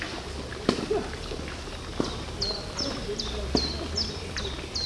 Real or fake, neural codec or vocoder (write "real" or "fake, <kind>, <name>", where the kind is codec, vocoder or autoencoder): real